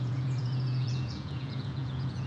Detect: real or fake fake